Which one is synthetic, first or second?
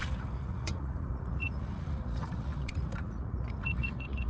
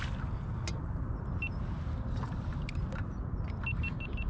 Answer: first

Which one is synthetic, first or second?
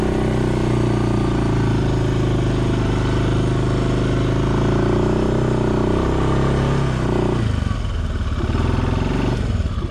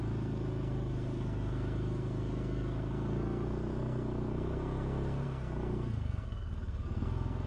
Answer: second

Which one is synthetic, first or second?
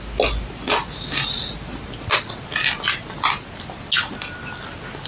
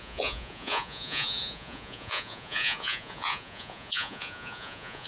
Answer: second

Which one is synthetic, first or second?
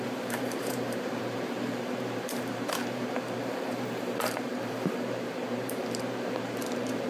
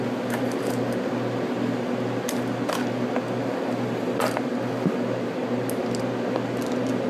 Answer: first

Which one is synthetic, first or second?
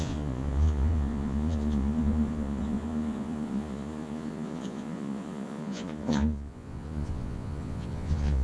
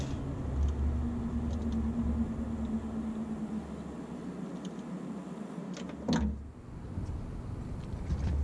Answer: first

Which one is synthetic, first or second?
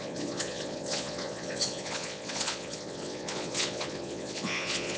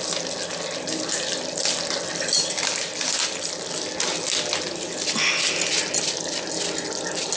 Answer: first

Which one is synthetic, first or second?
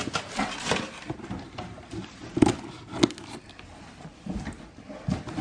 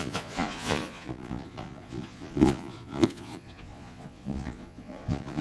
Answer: second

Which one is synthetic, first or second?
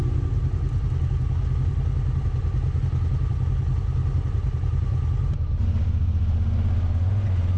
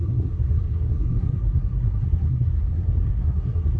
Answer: second